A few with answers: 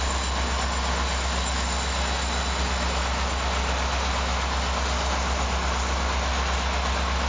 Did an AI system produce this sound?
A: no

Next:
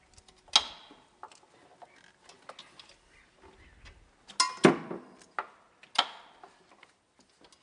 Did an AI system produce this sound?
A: no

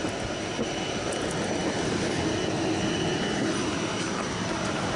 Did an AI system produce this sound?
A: no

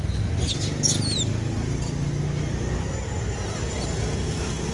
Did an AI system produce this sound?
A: no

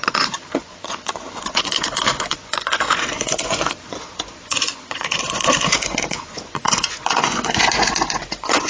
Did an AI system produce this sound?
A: yes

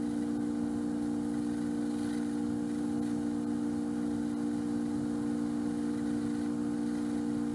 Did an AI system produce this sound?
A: no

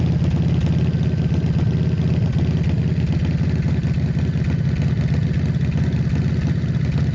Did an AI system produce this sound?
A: no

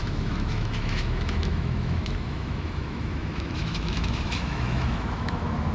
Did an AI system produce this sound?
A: yes